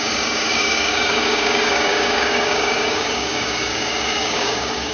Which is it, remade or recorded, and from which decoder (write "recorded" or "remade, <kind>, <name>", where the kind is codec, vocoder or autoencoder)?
remade, codec, DAC